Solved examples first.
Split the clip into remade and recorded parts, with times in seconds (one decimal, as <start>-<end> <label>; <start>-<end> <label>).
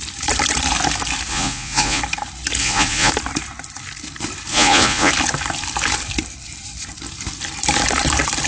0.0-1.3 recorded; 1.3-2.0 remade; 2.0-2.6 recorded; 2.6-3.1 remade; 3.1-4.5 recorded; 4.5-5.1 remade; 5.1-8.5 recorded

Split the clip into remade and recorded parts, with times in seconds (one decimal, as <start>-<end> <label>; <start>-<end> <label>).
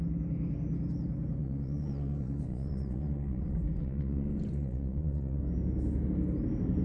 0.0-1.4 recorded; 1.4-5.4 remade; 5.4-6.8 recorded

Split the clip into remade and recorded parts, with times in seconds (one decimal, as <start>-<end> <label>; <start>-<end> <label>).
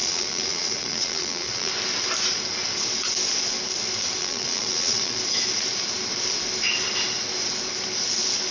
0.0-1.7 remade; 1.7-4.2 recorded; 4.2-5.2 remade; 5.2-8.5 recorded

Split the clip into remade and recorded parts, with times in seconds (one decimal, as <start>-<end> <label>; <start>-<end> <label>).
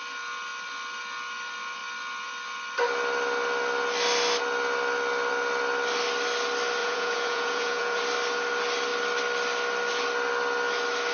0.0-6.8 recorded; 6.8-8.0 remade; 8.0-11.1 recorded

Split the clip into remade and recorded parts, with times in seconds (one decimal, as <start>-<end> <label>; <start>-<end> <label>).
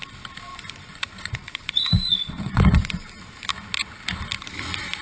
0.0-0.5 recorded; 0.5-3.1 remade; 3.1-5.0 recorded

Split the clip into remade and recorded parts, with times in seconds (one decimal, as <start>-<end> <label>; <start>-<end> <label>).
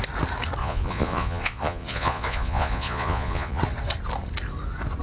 0.0-0.6 recorded; 0.6-3.6 remade; 3.6-5.0 recorded